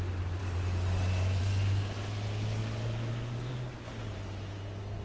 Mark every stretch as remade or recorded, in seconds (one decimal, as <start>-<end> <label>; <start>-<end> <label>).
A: 0.0-5.0 recorded